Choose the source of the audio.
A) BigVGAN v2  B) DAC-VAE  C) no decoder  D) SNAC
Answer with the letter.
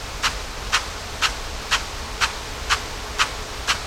C